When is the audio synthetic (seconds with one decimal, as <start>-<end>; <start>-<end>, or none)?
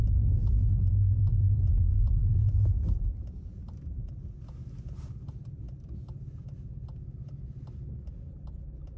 none